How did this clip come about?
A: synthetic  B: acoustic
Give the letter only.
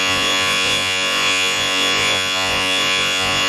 A